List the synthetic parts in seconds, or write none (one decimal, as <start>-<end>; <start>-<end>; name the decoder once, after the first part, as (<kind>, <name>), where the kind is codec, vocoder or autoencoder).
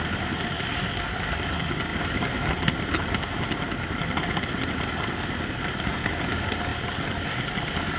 none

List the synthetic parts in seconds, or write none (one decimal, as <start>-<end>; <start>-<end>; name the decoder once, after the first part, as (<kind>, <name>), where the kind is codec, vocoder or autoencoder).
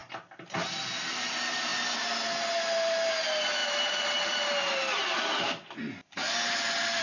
none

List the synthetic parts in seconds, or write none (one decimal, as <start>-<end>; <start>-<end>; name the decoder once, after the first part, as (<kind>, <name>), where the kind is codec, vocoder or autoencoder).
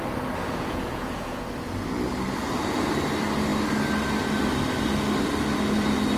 0.4-1.5 (vocoder, Vocos); 2.4-2.9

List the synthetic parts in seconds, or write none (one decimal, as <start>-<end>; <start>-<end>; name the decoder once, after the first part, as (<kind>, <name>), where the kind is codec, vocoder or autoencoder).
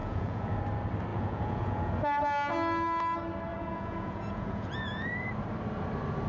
0.0-0.6 (vocoder, Vocos); 1.1-1.9; 3.5-5.3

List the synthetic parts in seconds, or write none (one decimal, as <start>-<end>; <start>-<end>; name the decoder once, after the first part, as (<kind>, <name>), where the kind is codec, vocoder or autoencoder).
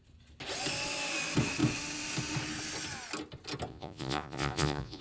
3.7-5.0 (vocoder, Vocos)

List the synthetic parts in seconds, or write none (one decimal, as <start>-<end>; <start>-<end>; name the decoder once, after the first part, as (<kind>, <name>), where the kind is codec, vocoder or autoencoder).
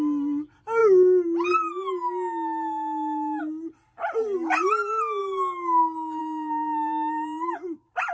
none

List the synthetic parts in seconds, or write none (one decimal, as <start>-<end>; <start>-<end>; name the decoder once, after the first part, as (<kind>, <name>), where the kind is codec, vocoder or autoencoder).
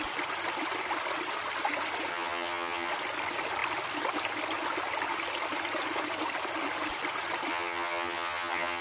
2.1-2.9 (vocoder, HiFi-GAN); 7.5-8.8